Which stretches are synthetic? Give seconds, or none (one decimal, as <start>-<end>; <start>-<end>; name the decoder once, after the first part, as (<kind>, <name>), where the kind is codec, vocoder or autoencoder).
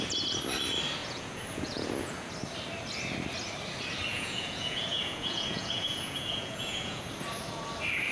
1.0-2.3 (vocoder, Vocos); 4.1-7.0